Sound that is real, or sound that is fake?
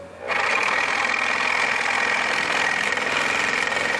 real